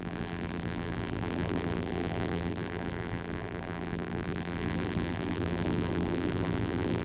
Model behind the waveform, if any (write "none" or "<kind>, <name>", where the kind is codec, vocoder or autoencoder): vocoder, BigVGAN v2